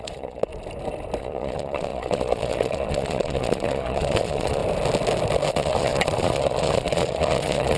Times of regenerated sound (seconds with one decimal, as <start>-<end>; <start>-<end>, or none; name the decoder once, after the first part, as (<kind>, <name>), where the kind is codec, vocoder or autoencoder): 0.0-0.5 (vocoder, Vocos); 1.2-4.6; 5.5-7.8